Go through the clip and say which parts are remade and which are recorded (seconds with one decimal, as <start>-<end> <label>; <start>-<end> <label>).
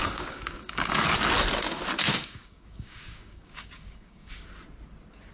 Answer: 0.0-1.1 remade; 1.1-2.1 recorded; 2.1-4.3 remade; 4.3-5.3 recorded